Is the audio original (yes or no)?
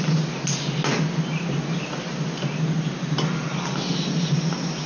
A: yes